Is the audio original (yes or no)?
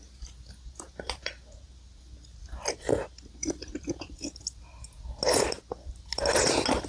yes